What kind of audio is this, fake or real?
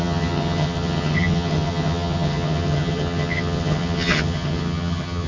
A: fake